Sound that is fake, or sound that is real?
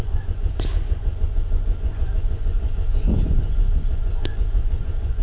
fake